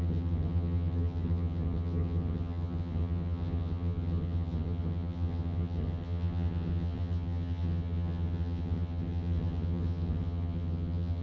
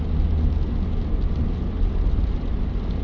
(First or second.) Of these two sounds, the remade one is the first